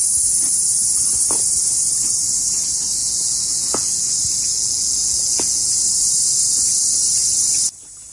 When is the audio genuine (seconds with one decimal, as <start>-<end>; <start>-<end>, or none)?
0.0-3.0; 4.0-4.5; 5.7-8.1